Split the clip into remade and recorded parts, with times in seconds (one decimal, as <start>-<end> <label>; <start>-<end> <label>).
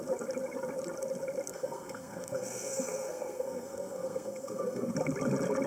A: 0.0-1.5 recorded; 1.5-4.9 remade; 4.9-5.7 recorded